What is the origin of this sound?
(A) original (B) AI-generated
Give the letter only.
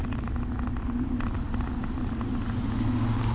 A